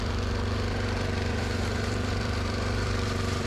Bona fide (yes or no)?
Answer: no